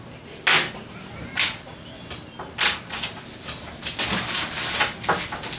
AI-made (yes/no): no